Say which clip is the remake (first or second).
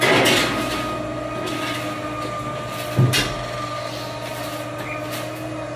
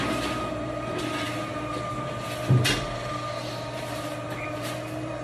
second